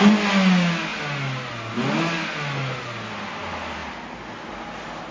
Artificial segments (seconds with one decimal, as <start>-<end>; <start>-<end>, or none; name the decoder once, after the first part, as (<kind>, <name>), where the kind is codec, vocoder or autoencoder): none